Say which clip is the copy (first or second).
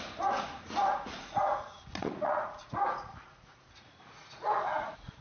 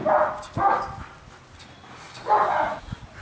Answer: first